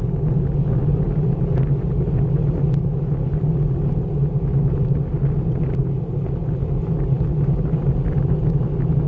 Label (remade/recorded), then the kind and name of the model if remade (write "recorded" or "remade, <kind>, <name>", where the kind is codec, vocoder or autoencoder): recorded